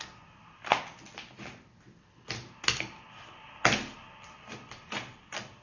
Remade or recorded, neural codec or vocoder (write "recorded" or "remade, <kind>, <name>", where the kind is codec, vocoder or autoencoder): recorded